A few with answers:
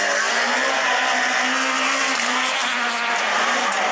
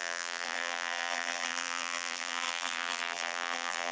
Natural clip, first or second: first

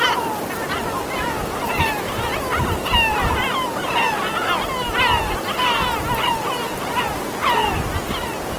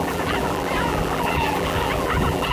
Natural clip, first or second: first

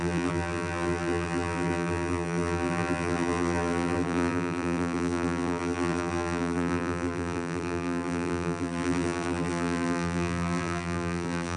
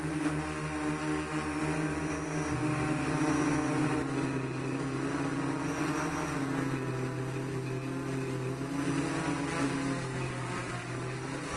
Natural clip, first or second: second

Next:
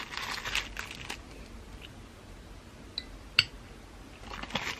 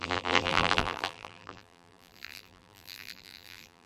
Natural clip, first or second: first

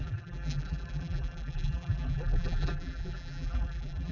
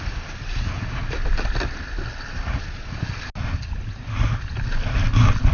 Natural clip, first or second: second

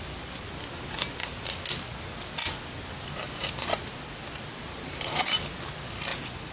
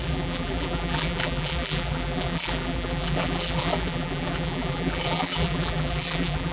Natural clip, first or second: first